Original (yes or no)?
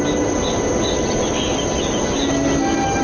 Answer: yes